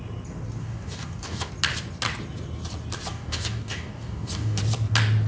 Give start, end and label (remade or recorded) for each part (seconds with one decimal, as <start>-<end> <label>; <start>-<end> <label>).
0.0-0.6 recorded; 0.6-1.5 remade; 1.5-3.1 recorded; 3.1-4.6 remade; 4.6-5.3 recorded